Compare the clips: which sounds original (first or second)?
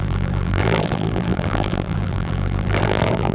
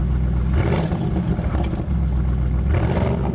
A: second